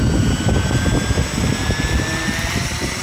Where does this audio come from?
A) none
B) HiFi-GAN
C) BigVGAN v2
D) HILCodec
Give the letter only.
A